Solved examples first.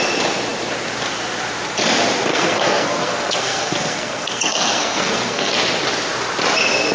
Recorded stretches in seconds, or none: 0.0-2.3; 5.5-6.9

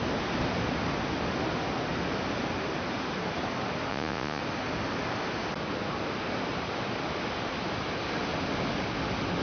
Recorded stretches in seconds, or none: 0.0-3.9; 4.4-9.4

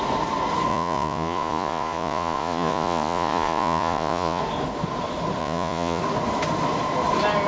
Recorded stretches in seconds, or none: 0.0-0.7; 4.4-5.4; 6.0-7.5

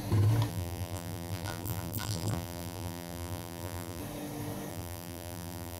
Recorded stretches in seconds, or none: 0.0-0.5; 4.0-4.7

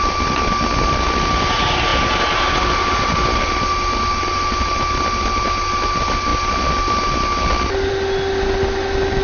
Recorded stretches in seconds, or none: 0.0-9.2

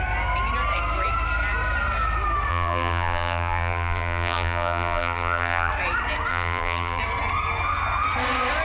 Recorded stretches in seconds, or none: 0.0-2.5; 5.7-6.3; 7.0-8.6